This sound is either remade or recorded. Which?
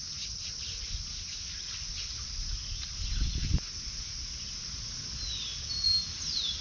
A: recorded